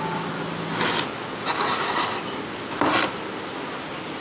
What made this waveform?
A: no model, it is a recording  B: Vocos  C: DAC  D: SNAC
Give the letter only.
A